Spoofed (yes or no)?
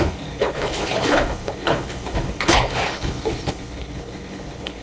yes